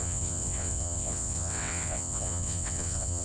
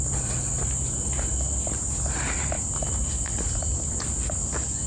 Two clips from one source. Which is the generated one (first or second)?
first